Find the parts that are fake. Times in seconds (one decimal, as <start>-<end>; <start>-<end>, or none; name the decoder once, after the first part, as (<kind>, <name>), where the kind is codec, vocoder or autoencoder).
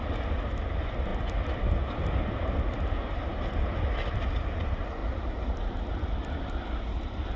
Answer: none